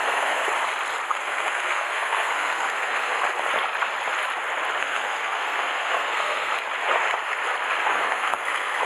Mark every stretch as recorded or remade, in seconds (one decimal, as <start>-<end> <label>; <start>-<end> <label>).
0.0-0.4 remade; 0.4-1.1 recorded; 1.1-3.1 remade; 3.1-4.8 recorded; 4.8-6.5 remade; 6.5-7.8 recorded; 7.8-8.9 remade